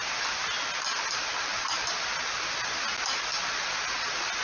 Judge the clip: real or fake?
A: real